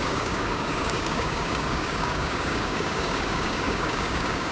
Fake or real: fake